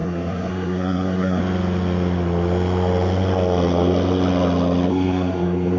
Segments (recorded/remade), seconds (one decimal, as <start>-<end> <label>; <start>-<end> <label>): 0.0-1.4 remade; 1.4-4.9 recorded; 4.9-5.8 remade

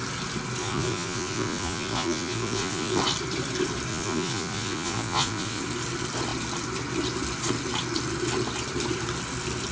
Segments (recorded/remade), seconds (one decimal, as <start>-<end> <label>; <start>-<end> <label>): 0.0-0.6 recorded; 0.6-3.0 remade; 3.0-3.9 recorded; 3.9-5.6 remade; 5.6-9.7 recorded